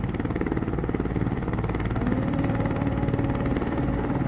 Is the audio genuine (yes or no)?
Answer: yes